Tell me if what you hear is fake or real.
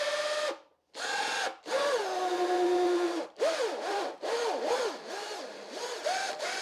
real